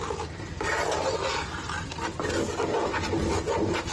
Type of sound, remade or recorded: recorded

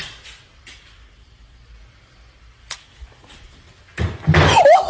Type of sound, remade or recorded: remade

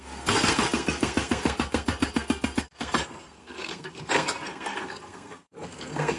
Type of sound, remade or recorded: remade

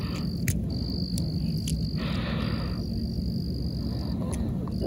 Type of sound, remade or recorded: recorded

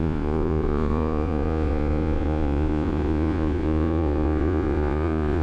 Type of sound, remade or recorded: remade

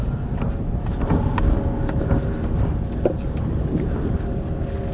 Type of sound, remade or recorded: recorded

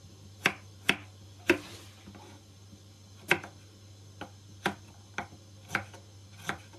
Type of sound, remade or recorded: recorded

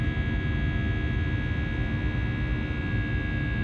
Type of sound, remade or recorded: recorded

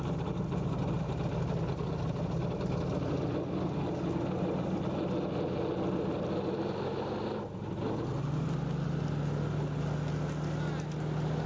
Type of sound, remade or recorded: recorded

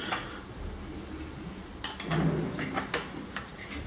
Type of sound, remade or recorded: recorded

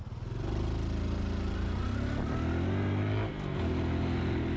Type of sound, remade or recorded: recorded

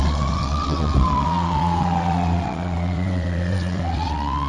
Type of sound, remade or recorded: remade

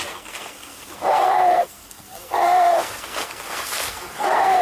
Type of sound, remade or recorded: remade